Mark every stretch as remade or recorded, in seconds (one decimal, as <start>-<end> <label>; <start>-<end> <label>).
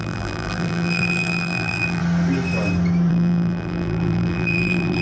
0.0-2.0 remade; 2.0-3.1 recorded; 3.1-5.0 remade